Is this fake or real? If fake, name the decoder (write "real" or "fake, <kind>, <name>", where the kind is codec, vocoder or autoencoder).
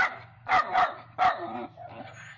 real